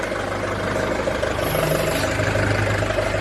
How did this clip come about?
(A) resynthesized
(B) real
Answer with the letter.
B